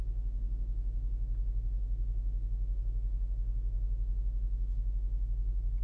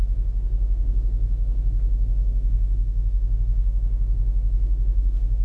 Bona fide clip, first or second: first